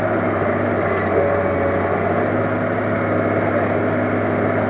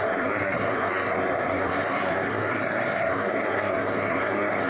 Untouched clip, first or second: first